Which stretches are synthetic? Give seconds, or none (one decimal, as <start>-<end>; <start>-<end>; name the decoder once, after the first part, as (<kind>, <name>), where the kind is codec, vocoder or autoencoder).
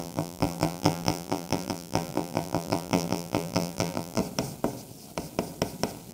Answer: 0.0-4.2 (vocoder, BigVGAN v2)